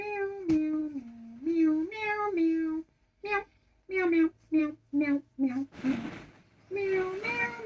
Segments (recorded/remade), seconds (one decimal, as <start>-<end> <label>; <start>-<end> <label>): 0.0-4.6 recorded; 4.6-6.1 remade; 6.1-7.7 recorded